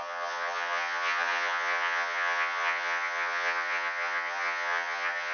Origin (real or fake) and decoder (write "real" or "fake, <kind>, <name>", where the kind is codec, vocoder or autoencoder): fake, vocoder, HiFi-GAN